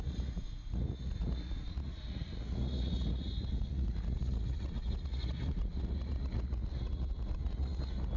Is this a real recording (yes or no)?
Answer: no